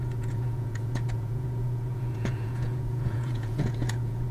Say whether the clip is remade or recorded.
remade